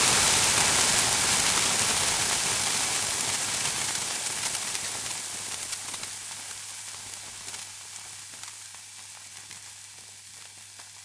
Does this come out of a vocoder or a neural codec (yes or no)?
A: no